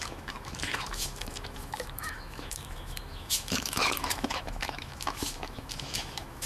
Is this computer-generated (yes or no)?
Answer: yes